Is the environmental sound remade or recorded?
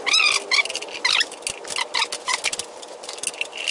recorded